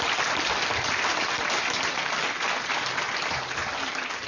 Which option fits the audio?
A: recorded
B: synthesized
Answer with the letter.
A